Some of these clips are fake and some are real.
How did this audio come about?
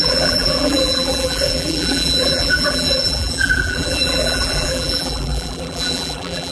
fake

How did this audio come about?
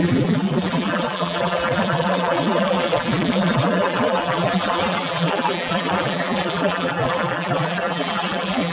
fake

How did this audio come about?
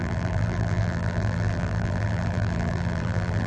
fake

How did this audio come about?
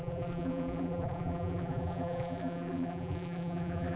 fake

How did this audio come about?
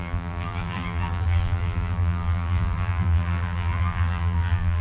fake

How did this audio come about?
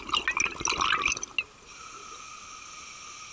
real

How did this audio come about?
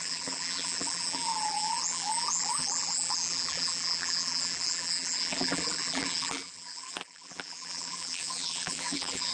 fake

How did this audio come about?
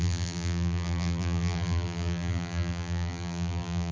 fake